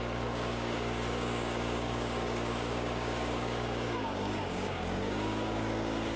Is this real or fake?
fake